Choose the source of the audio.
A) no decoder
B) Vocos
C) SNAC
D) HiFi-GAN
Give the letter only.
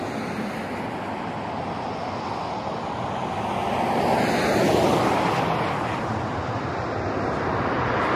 A